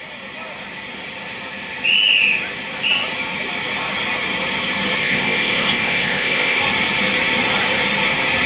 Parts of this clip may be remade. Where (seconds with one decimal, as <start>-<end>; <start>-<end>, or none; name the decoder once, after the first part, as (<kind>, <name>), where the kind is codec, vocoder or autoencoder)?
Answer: 5.0-6.6 (codec, ZipCodec)